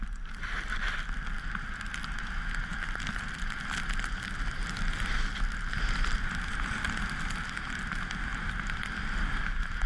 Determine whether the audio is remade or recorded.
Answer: recorded